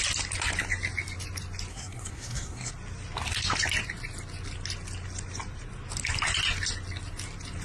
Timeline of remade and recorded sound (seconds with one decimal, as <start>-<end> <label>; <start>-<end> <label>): 0.0-1.7 recorded; 1.7-2.7 remade; 2.7-7.6 recorded